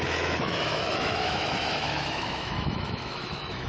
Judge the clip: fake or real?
fake